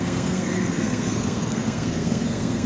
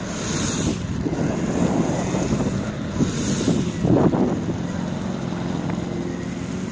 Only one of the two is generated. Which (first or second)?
first